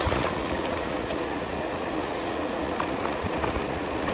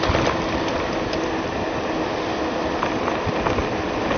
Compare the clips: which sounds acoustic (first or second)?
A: second